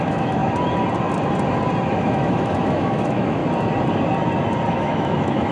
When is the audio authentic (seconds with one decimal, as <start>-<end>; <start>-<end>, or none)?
0.4-1.9; 3.4-4.7